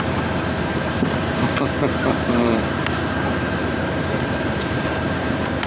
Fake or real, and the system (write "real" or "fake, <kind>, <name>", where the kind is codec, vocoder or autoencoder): fake, vocoder, BigVGAN v2